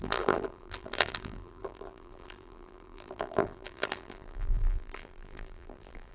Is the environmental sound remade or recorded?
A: remade